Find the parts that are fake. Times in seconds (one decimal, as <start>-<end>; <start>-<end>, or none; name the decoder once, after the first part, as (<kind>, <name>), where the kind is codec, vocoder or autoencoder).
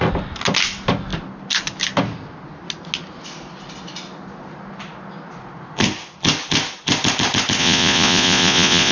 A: 7.6-8.9 (vocoder, Vocos)